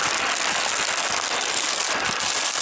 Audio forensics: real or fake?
real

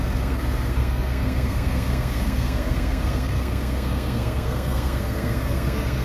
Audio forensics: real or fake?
fake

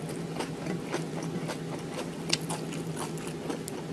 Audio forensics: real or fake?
real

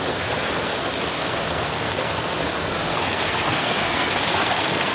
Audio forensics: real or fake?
fake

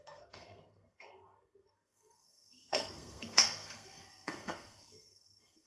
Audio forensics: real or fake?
fake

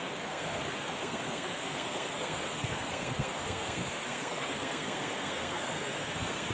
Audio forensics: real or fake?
fake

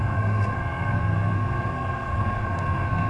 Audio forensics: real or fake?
fake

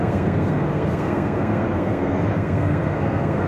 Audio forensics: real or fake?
fake